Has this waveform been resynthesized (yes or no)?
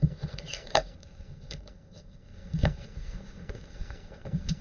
yes